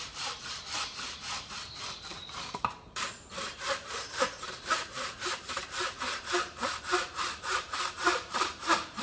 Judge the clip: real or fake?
fake